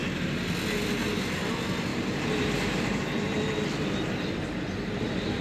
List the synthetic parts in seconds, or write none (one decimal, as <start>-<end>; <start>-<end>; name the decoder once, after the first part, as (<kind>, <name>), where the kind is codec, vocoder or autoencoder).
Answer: 1.9-2.5 (vocoder, BigVGAN v2)